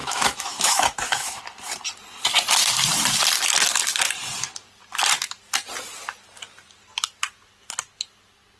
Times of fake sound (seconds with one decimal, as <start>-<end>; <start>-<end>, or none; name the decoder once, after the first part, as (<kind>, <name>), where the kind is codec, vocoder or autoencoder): 0.0-1.4 (autoencoder, DAC-VAE)